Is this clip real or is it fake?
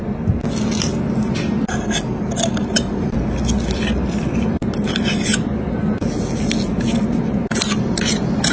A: real